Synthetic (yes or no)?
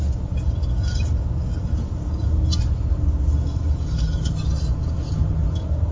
no